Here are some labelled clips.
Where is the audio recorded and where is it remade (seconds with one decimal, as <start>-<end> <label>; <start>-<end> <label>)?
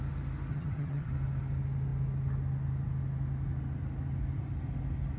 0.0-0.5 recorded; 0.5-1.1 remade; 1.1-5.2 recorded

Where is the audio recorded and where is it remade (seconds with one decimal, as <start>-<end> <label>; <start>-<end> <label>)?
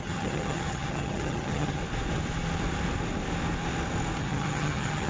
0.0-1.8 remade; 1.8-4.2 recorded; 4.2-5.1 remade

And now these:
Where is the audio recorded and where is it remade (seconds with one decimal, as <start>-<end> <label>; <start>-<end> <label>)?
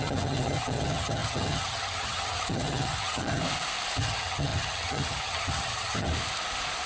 0.0-3.4 remade; 3.4-4.0 recorded; 4.0-6.1 remade; 6.1-6.9 recorded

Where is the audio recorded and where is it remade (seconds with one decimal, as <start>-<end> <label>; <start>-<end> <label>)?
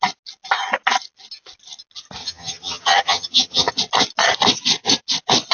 0.0-2.2 recorded; 2.2-3.7 remade; 3.7-5.5 recorded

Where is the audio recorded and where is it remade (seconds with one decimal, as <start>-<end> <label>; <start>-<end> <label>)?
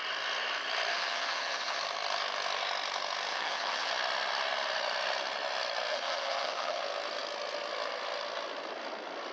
0.0-0.9 recorded; 0.9-1.8 remade; 1.8-3.3 recorded; 3.3-3.9 remade; 3.9-5.9 recorded; 5.9-6.8 remade; 6.8-9.3 recorded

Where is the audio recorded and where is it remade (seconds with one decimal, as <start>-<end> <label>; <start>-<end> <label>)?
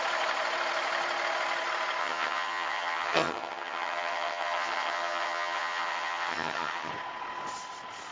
0.0-2.0 recorded; 2.0-6.9 remade; 6.9-8.1 recorded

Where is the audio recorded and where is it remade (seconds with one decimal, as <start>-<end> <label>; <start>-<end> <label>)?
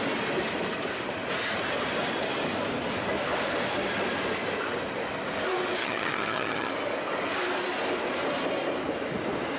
0.0-5.8 recorded; 5.8-6.7 remade; 6.7-9.6 recorded